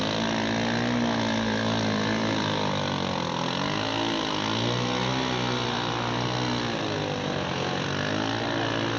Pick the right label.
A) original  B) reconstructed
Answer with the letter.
A